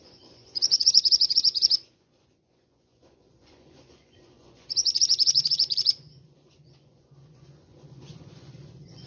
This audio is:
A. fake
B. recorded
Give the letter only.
A